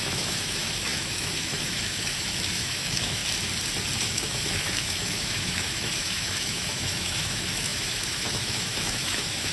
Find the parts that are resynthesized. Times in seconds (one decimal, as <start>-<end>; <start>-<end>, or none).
0.0-3.2; 4.0-9.5